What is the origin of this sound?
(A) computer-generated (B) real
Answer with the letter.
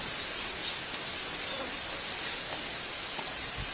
B